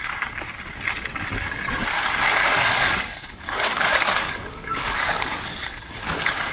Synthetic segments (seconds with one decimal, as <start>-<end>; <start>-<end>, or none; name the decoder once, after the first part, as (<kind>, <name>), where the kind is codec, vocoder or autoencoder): 2.4-6.5 (codec, DAC)

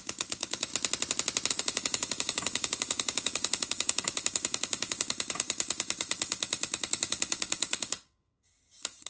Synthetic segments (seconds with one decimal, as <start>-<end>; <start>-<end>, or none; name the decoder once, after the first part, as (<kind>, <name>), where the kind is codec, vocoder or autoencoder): 0.0-0.7 (codec, DAC); 1.5-9.1

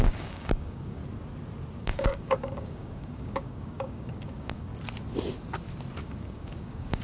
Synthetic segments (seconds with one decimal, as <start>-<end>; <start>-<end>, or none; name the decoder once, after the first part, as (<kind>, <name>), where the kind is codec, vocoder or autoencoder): 0.0-1.0 (codec, DAC); 1.8-4.7; 6.0-7.0

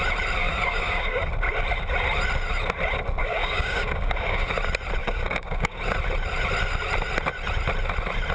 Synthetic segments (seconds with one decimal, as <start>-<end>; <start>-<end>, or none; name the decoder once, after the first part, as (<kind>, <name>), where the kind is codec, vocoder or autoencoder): 0.4-1.3 (codec, DAC); 3.2-4.5; 5.0-5.8

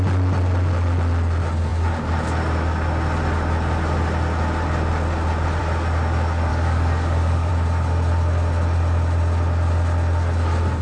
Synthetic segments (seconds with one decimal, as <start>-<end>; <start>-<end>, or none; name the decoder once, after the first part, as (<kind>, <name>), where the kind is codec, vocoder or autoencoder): 6.5-7.5 (codec, DAC)